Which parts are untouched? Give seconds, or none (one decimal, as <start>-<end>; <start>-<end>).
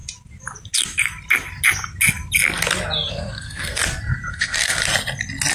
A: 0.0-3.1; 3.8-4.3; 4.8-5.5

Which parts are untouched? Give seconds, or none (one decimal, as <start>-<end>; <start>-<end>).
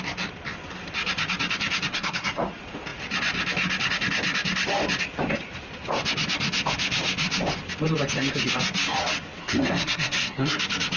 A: 0.0-1.9; 2.5-9.4; 10.6-11.0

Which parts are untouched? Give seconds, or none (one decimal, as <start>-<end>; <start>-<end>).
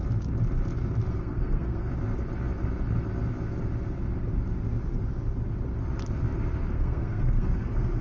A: 0.0-1.1; 1.9-6.7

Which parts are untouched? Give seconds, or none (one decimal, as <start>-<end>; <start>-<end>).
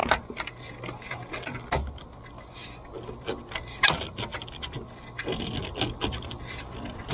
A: 0.0-7.1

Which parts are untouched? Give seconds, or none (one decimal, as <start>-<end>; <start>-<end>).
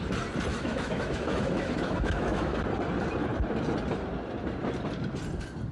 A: 0.0-0.5; 2.6-5.7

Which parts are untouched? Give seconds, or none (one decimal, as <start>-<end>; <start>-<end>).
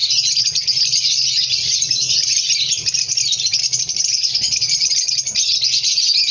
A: 0.0-6.3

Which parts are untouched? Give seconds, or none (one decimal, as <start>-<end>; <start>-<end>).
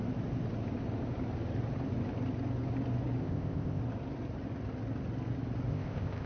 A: 0.0-3.2; 3.8-5.7